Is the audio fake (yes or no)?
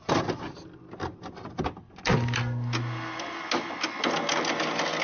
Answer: no